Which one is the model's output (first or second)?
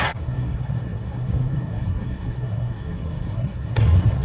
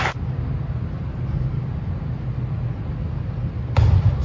first